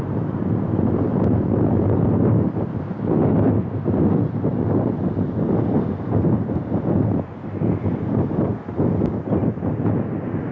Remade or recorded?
recorded